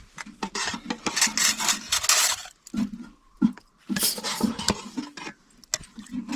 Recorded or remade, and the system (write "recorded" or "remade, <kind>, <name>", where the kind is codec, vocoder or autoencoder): recorded